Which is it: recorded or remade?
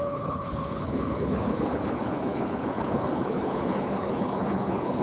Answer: remade